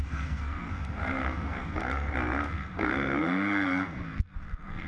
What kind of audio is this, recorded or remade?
remade